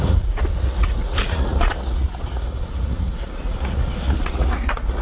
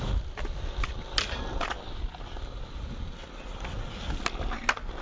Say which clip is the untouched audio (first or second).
second